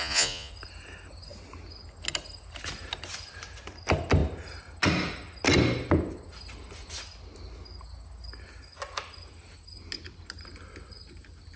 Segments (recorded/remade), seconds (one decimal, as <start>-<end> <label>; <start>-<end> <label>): 0.0-0.5 remade; 0.5-11.6 recorded